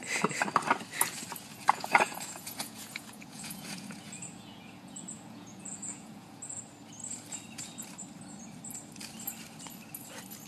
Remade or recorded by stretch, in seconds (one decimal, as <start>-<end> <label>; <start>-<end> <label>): 0.0-1.5 recorded; 1.5-6.6 remade; 6.6-10.5 recorded